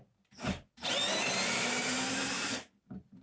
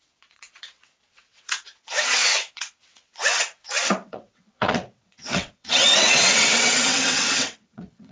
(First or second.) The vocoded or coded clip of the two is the second